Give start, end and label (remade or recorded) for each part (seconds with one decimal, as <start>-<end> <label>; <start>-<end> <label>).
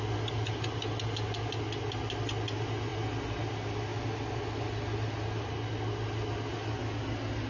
0.0-3.9 recorded; 3.9-5.7 remade; 5.7-7.5 recorded